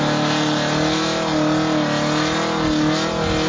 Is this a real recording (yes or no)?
yes